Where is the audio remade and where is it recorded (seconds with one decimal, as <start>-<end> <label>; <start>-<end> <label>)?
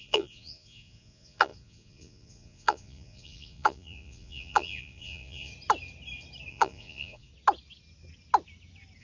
0.0-5.5 remade; 5.5-6.5 recorded; 6.5-7.3 remade; 7.3-9.0 recorded